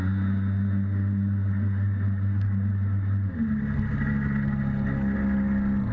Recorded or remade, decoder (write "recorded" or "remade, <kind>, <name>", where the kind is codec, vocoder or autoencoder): recorded